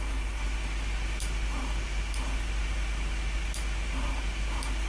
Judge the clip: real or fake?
real